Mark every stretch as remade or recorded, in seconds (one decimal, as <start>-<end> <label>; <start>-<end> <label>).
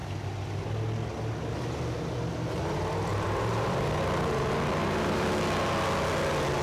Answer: 0.0-3.1 recorded; 3.1-3.8 remade; 3.8-4.8 recorded; 4.8-5.3 remade; 5.3-6.6 recorded